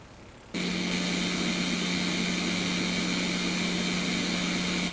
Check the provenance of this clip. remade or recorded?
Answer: recorded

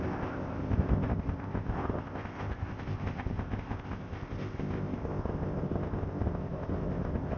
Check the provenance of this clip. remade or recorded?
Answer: remade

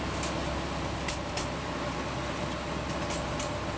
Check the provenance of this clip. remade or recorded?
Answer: recorded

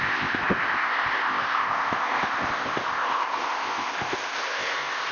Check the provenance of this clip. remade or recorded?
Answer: remade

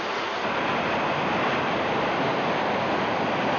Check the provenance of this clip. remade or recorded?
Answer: recorded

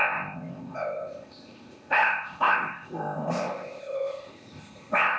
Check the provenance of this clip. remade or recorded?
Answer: remade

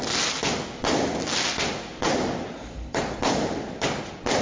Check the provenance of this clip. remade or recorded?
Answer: recorded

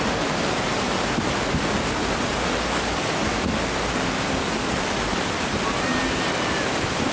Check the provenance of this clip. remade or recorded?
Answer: recorded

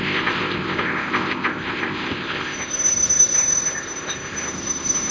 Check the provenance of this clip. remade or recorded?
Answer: remade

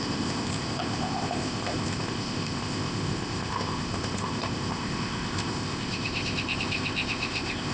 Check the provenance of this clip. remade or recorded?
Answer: remade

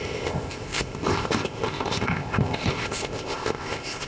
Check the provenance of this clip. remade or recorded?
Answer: remade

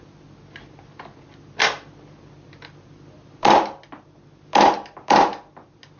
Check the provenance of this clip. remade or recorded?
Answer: recorded